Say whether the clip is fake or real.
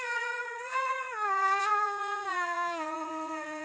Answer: fake